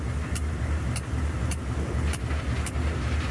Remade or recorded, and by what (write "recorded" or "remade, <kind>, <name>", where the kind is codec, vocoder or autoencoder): recorded